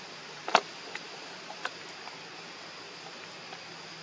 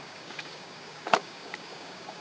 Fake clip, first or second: second